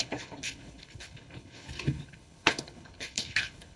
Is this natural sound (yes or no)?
no